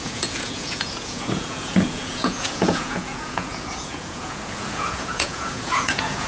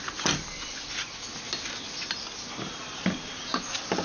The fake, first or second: first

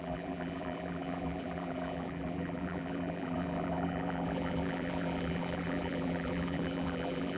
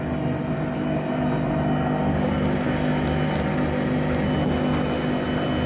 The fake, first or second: first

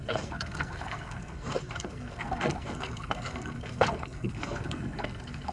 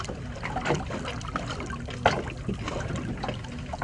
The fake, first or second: first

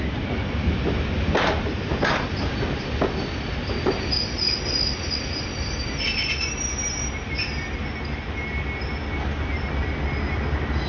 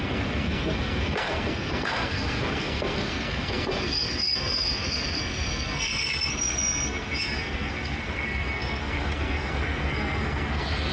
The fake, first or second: second